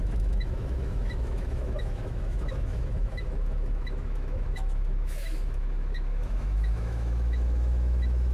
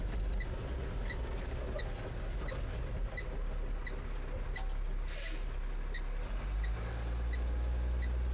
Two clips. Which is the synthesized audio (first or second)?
first